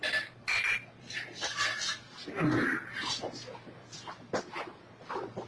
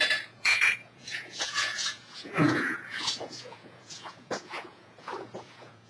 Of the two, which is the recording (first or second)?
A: first